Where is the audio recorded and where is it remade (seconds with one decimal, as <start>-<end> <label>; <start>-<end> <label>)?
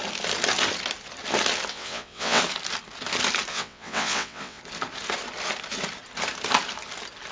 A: 0.0-1.7 recorded; 1.7-2.4 remade; 2.4-3.5 recorded; 3.5-4.6 remade; 4.6-7.3 recorded